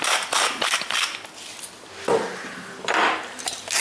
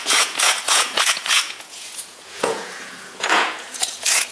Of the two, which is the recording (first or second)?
first